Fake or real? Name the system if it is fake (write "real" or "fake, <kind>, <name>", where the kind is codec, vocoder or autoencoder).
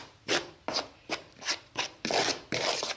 real